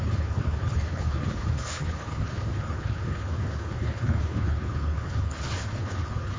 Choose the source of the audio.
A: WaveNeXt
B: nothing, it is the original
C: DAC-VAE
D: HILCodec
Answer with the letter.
D